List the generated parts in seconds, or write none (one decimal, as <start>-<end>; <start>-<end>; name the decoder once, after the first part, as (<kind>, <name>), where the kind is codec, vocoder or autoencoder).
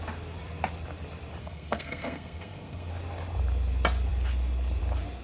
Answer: 1.4-2.9 (codec, SNAC)